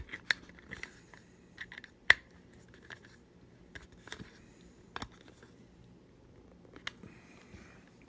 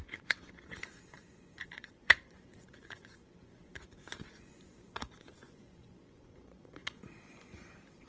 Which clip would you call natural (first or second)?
first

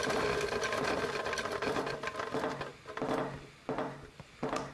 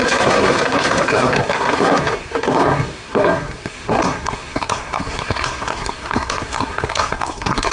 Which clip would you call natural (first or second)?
first